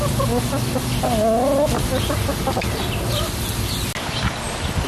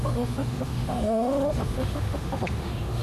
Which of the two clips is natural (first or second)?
first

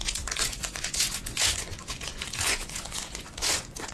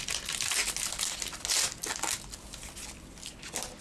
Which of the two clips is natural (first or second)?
second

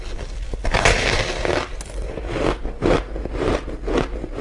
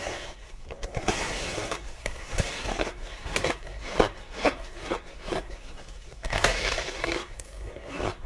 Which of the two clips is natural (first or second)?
first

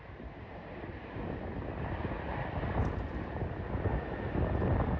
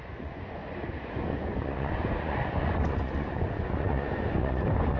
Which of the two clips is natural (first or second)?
first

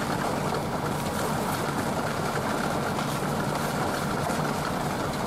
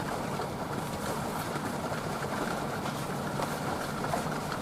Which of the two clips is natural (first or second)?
first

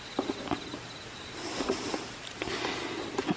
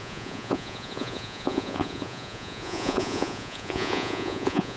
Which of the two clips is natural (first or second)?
first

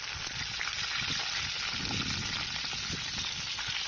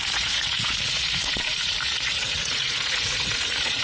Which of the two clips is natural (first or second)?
first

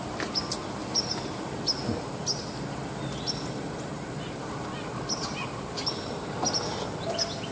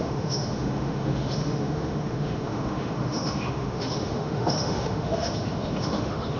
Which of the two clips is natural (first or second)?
first